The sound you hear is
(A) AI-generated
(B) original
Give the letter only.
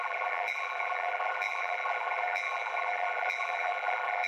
A